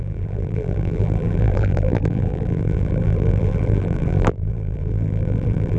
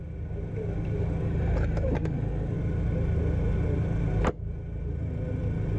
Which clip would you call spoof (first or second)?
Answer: first